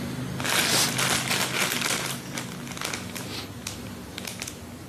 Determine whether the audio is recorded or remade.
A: recorded